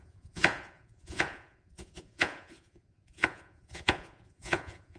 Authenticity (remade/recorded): remade